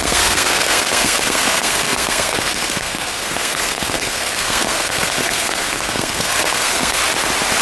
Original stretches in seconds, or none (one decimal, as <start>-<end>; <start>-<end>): 7.0-7.6